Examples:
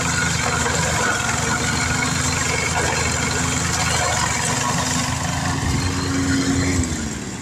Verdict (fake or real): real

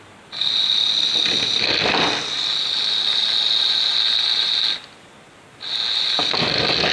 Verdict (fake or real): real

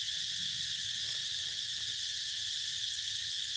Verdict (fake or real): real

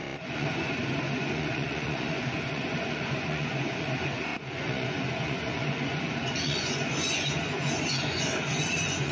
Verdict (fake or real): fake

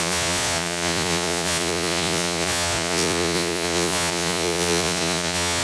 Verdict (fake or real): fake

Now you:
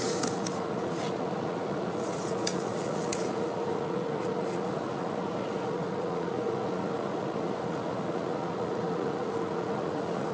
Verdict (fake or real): fake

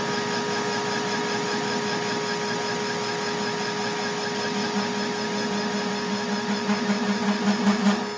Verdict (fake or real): real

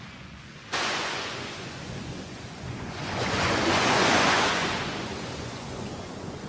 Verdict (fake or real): fake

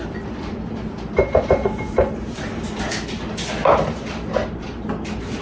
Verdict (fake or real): real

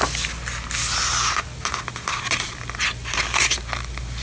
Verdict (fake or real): real